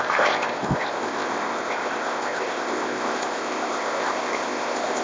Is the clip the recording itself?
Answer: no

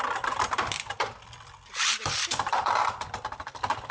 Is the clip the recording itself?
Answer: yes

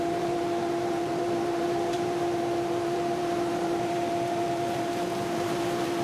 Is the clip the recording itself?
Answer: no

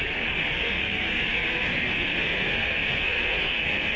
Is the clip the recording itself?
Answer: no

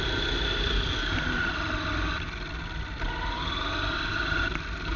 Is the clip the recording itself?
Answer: yes